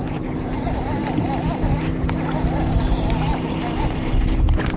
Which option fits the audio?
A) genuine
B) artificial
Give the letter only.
A